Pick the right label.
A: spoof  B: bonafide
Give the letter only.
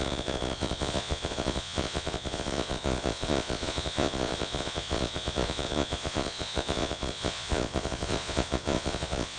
A